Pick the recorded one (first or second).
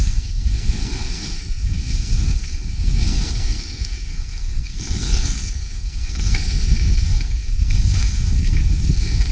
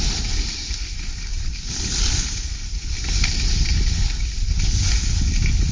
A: second